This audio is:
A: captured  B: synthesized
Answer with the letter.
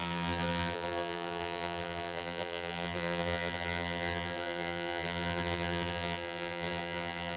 B